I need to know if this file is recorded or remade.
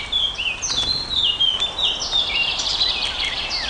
recorded